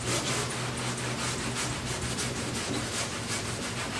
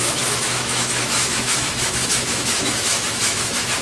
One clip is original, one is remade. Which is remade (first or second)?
second